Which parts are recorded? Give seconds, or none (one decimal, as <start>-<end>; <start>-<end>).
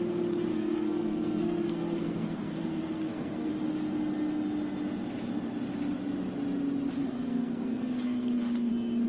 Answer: 0.0-0.5; 3.5-7.0; 8.7-9.1